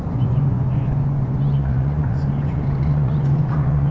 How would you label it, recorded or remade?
remade